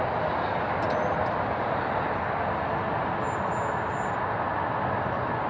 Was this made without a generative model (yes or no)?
yes